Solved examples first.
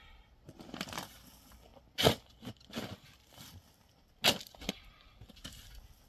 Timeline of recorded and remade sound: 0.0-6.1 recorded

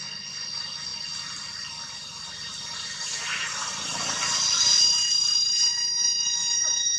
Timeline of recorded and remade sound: 0.0-6.4 recorded; 6.4-7.0 remade

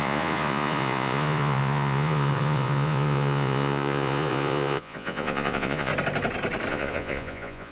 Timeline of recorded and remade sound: 0.0-5.9 remade; 5.9-6.7 recorded; 6.7-7.7 remade

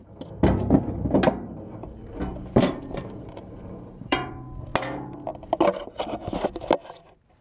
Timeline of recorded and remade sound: 0.0-2.3 recorded; 2.3-4.3 remade; 4.3-7.4 recorded

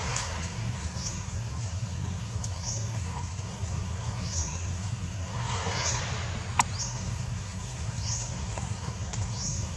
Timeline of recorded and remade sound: 0.0-6.0 remade; 6.0-6.8 recorded; 6.8-9.8 remade

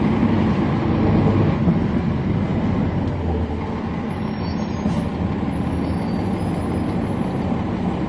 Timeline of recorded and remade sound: 0.0-8.1 recorded

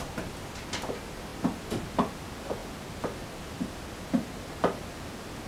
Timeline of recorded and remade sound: 0.0-5.5 recorded